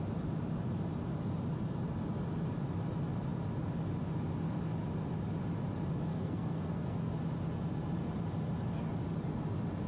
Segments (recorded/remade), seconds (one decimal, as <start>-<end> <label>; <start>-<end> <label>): 0.0-6.1 recorded; 6.1-7.1 remade; 7.1-9.9 recorded

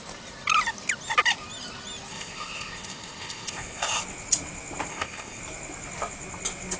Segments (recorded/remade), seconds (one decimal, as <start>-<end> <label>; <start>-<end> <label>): 0.0-2.1 recorded; 2.1-4.0 remade; 4.0-4.9 recorded; 4.9-5.4 remade; 5.4-6.8 recorded

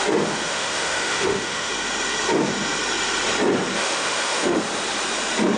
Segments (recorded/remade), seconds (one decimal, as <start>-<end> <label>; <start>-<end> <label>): 0.0-0.5 recorded; 0.5-1.7 remade; 1.7-3.8 recorded; 3.8-4.6 remade; 4.6-5.6 recorded

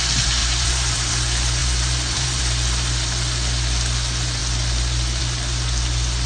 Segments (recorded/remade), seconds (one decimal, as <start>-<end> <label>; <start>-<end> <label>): 0.0-0.4 recorded; 0.4-1.1 remade; 1.1-1.6 recorded; 1.6-2.4 remade; 2.4-6.3 recorded

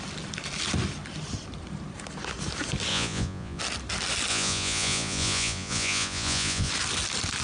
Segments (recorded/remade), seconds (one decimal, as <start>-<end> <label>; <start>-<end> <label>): 0.0-2.9 recorded; 2.9-3.6 remade; 3.6-4.3 recorded; 4.3-6.7 remade; 6.7-7.4 recorded

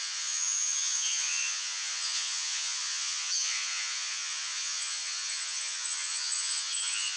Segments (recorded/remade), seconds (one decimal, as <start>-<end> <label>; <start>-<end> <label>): 0.0-7.2 remade

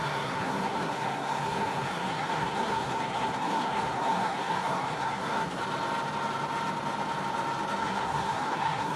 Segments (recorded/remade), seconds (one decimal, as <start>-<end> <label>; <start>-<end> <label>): 0.0-5.6 remade; 5.6-7.8 recorded; 7.8-9.0 remade

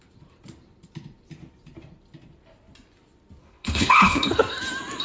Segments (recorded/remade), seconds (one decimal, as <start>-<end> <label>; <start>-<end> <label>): 0.0-3.4 recorded; 3.4-4.3 remade; 4.3-5.0 recorded